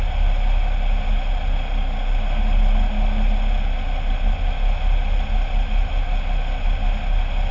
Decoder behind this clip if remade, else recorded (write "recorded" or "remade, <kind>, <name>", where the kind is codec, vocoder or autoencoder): recorded